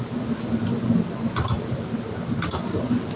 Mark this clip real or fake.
real